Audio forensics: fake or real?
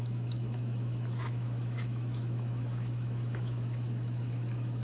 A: fake